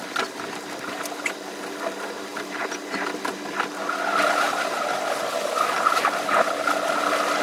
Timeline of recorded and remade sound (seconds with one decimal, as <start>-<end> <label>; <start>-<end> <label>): 0.0-7.4 recorded